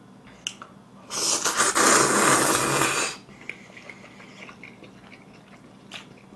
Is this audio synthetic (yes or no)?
no